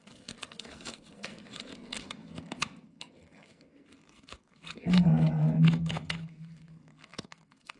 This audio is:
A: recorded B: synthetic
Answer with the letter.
B